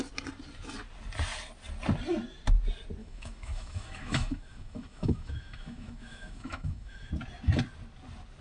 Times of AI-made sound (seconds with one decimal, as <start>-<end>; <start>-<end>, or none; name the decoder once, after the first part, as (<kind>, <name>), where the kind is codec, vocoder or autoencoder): 3.0-7.1 (autoencoder, DAC-VAE)